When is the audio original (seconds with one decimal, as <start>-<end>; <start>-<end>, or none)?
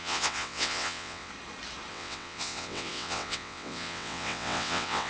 1.3-1.9